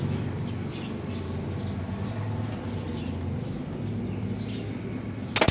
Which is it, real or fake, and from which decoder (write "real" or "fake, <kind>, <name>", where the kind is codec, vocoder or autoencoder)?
real